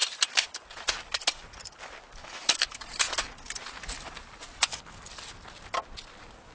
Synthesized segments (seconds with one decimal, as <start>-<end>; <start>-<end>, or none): 2.2-2.8